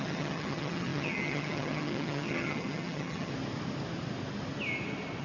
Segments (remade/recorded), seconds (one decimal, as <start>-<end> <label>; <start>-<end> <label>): 0.0-3.3 remade; 3.3-5.2 recorded